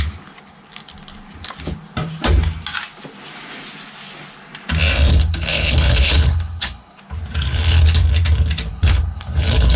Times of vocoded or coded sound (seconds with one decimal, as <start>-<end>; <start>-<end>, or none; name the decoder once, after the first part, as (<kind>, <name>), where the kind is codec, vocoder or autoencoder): 5.1-7.0 (codec, HILCodec); 7.5-8.0; 8.7-9.8